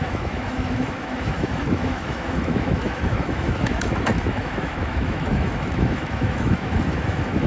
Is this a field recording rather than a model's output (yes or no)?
no